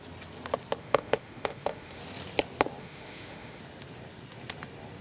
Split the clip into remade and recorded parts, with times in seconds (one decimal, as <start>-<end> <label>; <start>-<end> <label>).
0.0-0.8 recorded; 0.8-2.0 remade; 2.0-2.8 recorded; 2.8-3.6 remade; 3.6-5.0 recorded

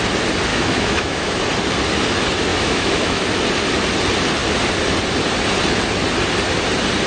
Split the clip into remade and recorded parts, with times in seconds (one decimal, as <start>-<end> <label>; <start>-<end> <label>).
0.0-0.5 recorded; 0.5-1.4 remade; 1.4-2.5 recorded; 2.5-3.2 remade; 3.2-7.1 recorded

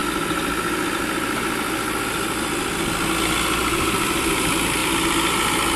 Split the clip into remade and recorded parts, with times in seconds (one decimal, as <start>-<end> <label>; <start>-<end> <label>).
0.0-3.6 recorded; 3.6-4.3 remade; 4.3-4.8 recorded; 4.8-5.8 remade